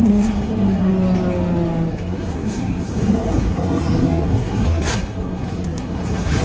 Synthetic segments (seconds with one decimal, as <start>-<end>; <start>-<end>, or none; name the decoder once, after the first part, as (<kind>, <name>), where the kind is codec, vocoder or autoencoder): 0.0-0.9 (codec, SNAC); 1.9-6.4